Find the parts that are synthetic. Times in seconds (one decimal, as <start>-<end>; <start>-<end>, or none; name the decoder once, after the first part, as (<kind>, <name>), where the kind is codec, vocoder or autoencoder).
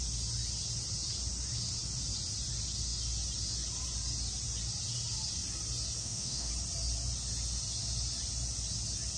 6.0-6.5 (autoencoder, DAC-VAE)